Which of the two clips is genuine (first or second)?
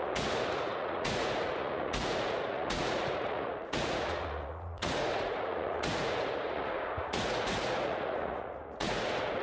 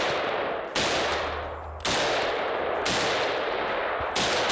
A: second